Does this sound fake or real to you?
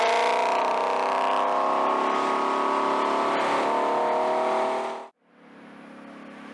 real